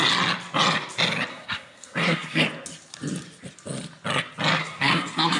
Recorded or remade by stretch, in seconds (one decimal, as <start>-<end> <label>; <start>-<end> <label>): 0.0-1.3 recorded; 1.3-2.4 remade; 2.4-4.6 recorded; 4.6-5.4 remade

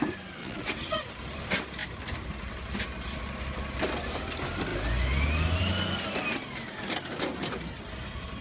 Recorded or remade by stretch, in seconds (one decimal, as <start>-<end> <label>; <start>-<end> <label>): 0.0-0.4 recorded; 0.4-1.1 remade; 1.1-8.4 recorded

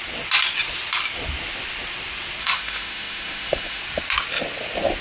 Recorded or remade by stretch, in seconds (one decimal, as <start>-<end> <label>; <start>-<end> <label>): 0.0-2.4 recorded; 2.4-3.8 remade; 3.8-5.0 recorded

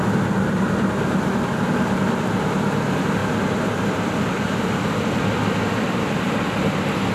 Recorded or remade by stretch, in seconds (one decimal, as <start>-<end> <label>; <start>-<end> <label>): 0.0-3.2 recorded; 3.2-7.1 remade

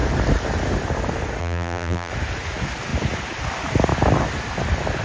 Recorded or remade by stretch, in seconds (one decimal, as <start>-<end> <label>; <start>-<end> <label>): 0.0-1.4 recorded; 1.4-2.1 remade; 2.1-5.0 recorded